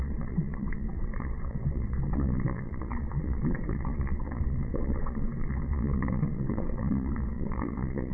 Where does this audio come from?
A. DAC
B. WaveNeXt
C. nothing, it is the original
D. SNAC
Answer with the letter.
B